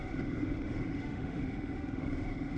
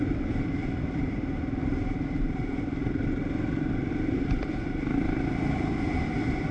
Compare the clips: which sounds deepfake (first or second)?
first